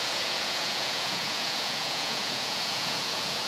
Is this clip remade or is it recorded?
remade